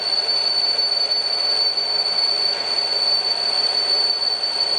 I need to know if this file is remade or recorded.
recorded